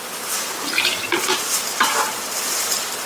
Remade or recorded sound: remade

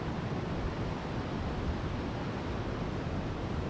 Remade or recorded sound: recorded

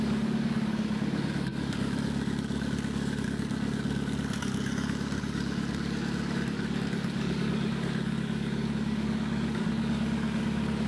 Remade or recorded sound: remade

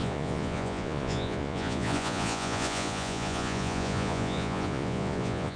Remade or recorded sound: remade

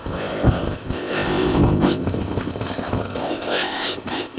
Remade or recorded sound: remade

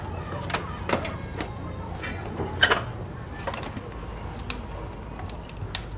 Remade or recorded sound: recorded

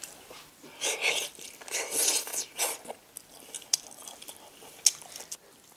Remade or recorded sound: recorded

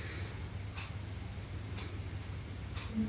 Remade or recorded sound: recorded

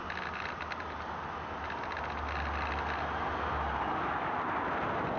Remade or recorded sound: recorded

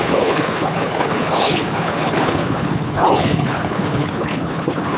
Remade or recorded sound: remade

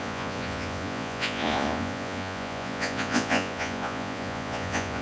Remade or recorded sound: remade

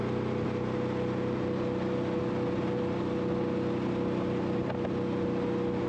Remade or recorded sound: recorded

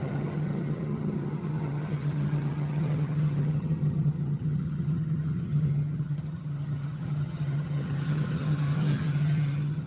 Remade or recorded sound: remade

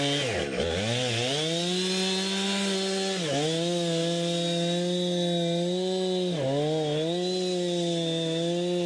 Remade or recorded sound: recorded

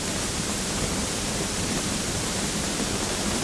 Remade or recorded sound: remade